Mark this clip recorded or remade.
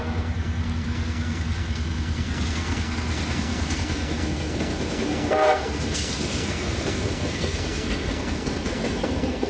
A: remade